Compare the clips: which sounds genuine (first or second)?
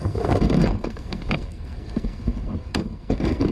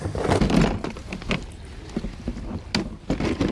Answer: second